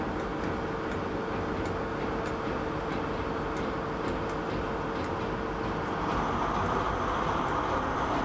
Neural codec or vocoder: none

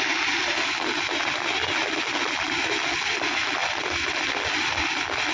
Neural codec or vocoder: none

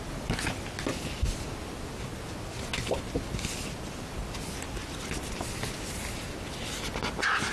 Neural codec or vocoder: none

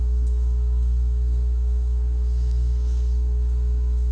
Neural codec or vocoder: codec, SNAC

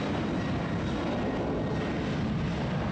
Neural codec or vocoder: none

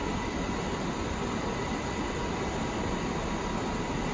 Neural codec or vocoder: none